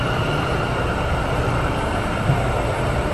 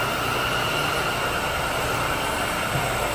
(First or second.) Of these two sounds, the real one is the second